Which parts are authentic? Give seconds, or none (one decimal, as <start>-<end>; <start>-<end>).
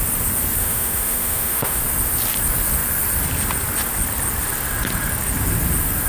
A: 0.0-0.6; 1.8-6.1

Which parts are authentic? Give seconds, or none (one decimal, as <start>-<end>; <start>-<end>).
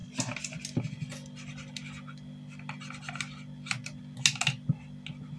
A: 0.0-5.4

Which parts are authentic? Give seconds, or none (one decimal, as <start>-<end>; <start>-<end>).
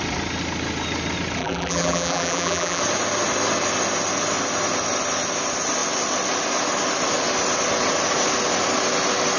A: 0.0-1.4; 2.8-9.4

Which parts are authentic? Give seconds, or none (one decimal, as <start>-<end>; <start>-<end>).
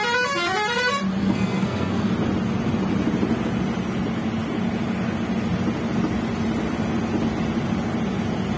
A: 0.0-1.2; 2.1-8.6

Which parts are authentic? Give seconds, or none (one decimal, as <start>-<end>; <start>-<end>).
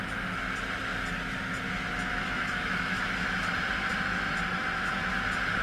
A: 0.0-2.1; 3.5-4.5; 5.1-5.6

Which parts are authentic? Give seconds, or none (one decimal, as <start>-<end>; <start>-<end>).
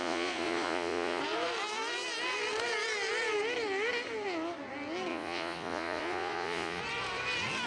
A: 1.2-5.1; 6.8-7.7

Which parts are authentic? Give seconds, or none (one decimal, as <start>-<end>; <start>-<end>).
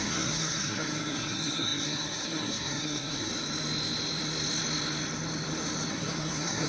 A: 3.3-5.9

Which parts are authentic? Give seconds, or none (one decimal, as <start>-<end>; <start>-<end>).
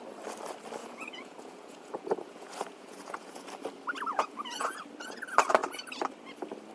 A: 0.0-0.8; 3.5-4.1; 4.8-6.7